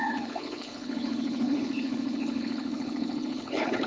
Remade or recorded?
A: remade